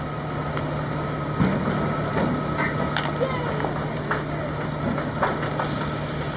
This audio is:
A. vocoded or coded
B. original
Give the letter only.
B